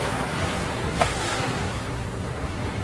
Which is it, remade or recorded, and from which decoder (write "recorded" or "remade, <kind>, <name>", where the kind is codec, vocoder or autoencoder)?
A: remade, codec, SNAC